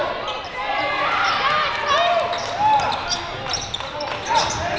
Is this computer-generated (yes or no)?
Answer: no